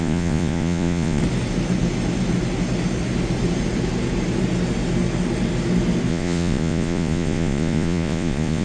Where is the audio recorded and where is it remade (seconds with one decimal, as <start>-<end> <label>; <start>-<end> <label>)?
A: 0.0-1.2 remade; 1.2-6.1 recorded; 6.1-8.6 remade